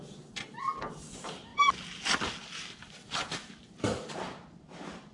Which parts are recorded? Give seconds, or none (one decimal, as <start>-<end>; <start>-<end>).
1.5-4.1